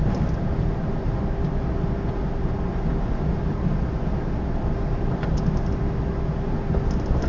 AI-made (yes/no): no